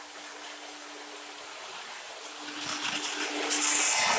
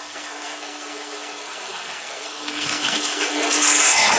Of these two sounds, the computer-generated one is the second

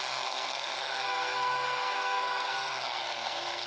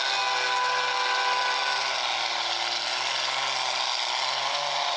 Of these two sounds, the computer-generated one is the first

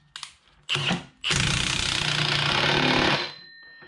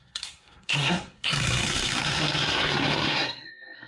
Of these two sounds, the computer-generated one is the second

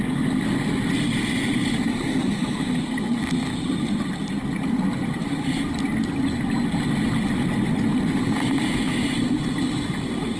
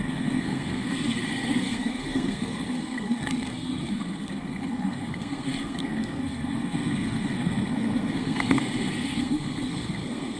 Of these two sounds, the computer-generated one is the second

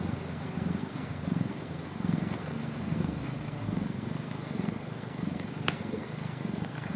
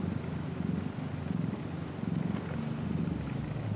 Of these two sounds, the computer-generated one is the first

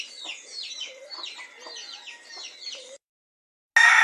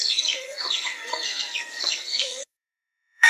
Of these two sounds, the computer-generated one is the second